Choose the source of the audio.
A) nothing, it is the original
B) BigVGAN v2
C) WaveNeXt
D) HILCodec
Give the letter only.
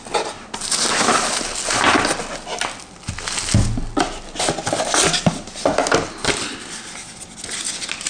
A